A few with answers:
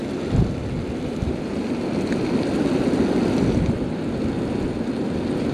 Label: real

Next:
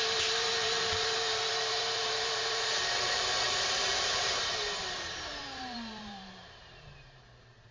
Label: fake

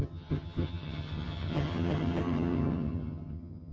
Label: fake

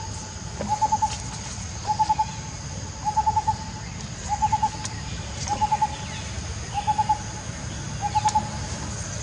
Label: real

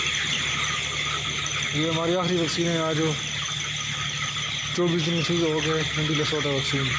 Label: real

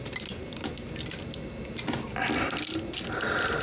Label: real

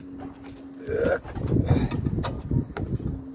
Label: real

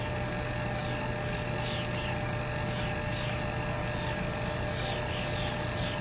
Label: real